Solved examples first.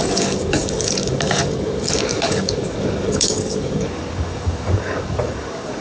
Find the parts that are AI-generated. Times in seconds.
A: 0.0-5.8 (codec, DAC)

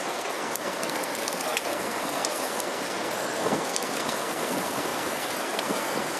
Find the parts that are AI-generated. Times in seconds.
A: 0.0-6.2 (codec, SNAC)

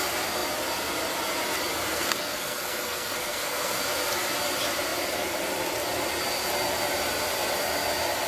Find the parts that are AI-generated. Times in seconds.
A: 1.9-3.8 (codec, SNAC)

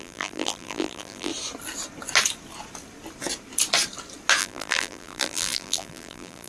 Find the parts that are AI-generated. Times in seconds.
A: 0.0-1.3 (vocoder, BigVGAN v2); 4.4-6.5

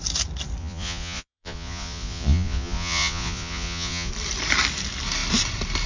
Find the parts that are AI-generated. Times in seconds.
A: 0.6-4.1 (vocoder, Vocos)